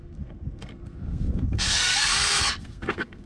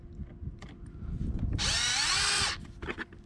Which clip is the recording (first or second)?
second